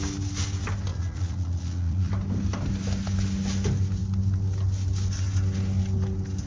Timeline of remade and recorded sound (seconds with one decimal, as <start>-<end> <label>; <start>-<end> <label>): 0.0-0.9 recorded; 0.9-2.1 remade; 2.1-6.5 recorded

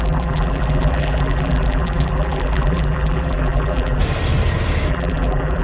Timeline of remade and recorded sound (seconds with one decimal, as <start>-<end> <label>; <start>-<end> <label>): 0.0-4.0 remade; 4.0-4.9 recorded; 4.9-5.6 remade

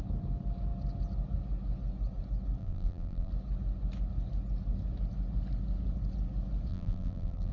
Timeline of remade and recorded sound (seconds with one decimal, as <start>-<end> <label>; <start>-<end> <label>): 0.0-2.6 recorded; 2.6-3.3 remade; 3.3-6.7 recorded; 6.7-7.5 remade

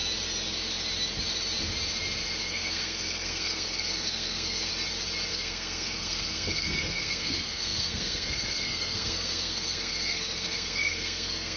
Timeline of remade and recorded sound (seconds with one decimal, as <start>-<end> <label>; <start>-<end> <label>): 0.0-2.4 recorded; 2.4-4.7 remade; 4.7-5.3 recorded; 5.3-11.6 remade

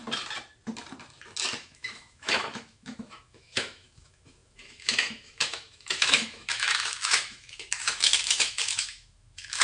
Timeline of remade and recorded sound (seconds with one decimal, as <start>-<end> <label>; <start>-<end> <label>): 0.0-1.6 recorded; 1.6-9.6 remade

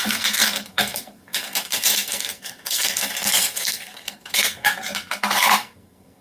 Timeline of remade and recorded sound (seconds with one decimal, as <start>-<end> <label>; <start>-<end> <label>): 0.0-6.2 remade